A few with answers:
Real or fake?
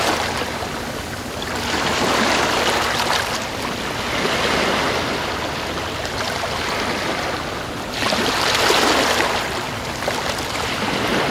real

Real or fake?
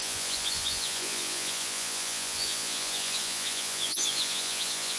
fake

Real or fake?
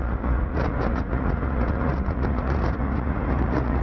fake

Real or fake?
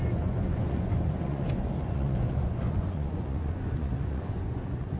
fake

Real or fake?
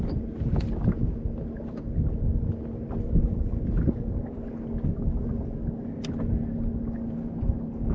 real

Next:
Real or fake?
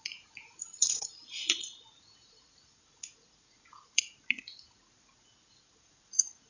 fake